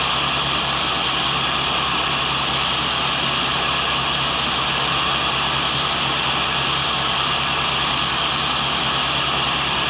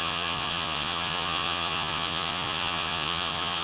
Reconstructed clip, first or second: second